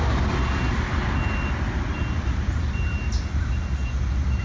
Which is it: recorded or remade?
recorded